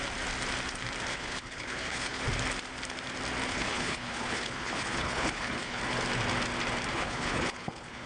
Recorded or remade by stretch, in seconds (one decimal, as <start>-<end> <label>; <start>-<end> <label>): 0.0-1.1 recorded; 1.1-2.2 remade; 2.2-3.5 recorded; 3.5-5.8 remade; 5.8-6.9 recorded; 6.9-8.1 remade